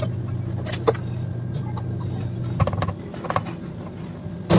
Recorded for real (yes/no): yes